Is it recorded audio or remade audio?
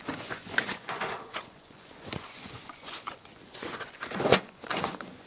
remade